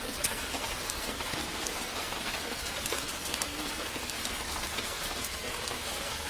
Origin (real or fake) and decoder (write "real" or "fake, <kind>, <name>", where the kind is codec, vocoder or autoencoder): fake, codec, SNAC